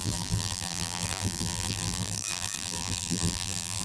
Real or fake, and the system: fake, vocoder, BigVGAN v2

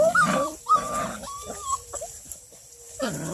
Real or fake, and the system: fake, vocoder, BigVGAN v2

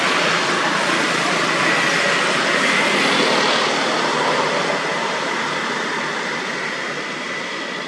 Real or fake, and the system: real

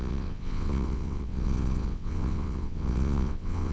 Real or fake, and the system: fake, vocoder, WaveNeXt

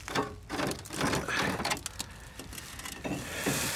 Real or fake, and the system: real